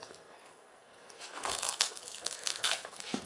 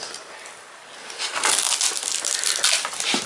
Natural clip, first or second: second